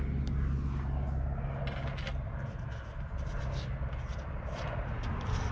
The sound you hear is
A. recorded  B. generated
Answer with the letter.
A